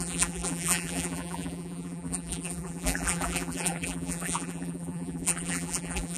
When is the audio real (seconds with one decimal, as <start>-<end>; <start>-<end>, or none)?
none